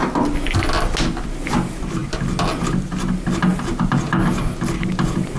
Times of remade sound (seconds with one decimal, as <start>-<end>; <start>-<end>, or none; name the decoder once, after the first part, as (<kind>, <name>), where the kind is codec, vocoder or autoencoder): none